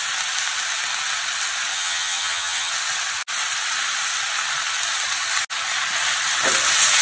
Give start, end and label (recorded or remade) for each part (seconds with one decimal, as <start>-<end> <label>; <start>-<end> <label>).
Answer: 0.0-1.7 recorded; 1.7-2.7 remade; 2.7-7.0 recorded